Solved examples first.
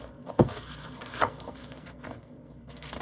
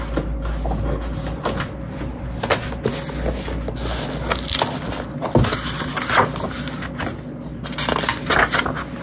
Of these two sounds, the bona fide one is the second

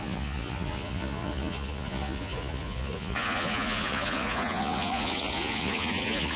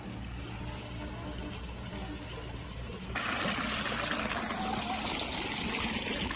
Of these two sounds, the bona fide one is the second